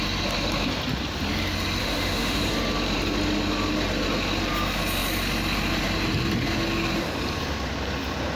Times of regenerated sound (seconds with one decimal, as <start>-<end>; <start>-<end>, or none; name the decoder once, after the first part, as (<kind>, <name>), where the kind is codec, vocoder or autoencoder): 1.8-2.4 (autoencoder, DAC-VAE)